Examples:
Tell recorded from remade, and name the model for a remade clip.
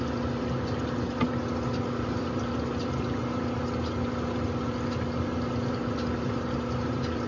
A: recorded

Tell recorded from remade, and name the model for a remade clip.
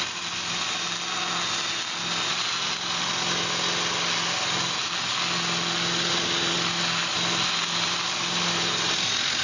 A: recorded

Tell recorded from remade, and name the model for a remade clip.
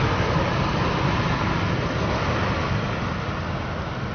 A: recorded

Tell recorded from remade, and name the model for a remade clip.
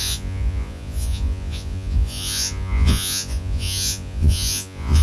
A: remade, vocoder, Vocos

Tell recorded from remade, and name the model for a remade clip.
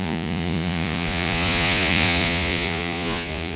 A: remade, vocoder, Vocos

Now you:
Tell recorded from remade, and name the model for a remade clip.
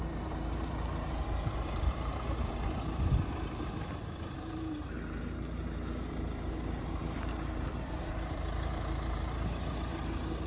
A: remade, vocoder, BigVGAN v2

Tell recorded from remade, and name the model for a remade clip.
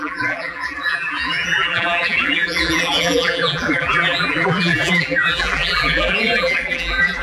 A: remade, vocoder, BigVGAN v2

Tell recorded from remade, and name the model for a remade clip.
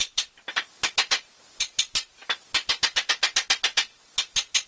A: recorded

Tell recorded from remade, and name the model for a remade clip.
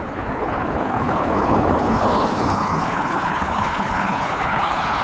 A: remade, codec, HILCodec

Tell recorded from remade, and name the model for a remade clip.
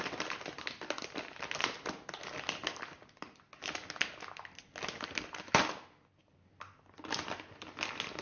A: recorded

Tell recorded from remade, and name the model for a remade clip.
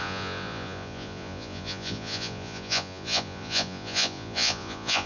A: remade, vocoder, Vocos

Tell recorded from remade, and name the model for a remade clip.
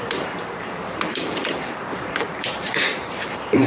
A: remade, vocoder, BigVGAN v2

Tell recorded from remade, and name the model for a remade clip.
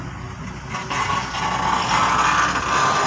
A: recorded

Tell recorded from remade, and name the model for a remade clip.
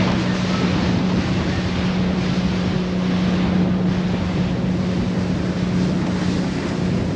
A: recorded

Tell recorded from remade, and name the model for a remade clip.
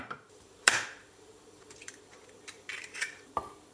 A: remade, vocoder, BigVGAN v2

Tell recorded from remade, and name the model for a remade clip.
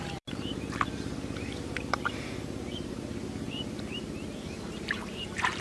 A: remade, vocoder, BigVGAN v2